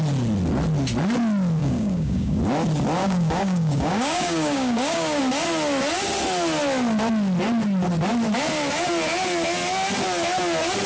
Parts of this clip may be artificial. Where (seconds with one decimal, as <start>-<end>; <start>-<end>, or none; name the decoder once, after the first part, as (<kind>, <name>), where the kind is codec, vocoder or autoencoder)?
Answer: 1.6-2.4 (codec, DAC); 3.0-5.2